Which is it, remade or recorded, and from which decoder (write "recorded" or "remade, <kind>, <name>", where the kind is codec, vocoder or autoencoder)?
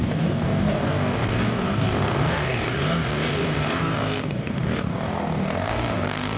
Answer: remade, codec, DAC